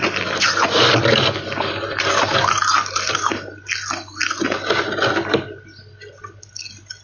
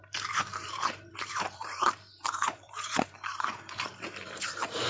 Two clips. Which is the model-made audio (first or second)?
second